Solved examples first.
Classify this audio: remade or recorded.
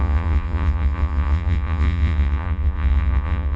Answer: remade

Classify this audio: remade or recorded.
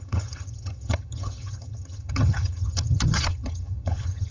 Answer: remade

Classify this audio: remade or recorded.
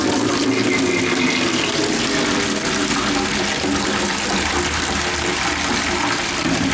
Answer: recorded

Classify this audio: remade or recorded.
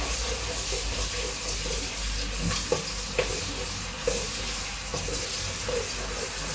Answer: recorded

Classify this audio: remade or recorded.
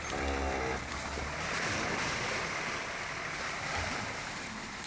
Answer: recorded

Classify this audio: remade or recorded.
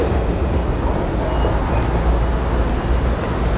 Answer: recorded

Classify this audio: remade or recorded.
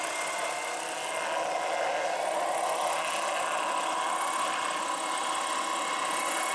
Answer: recorded